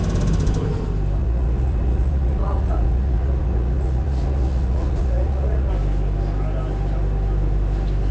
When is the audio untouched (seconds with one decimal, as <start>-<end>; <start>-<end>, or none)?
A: 0.0-1.2; 5.7-8.1